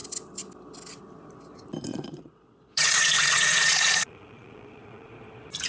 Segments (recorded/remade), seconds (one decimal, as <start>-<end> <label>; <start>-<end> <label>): 0.0-1.9 recorded; 1.9-5.1 remade; 5.1-5.7 recorded